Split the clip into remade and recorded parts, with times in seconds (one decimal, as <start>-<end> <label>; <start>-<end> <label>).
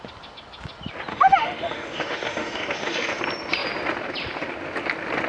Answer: 0.0-1.1 recorded; 1.1-3.2 remade; 3.2-5.3 recorded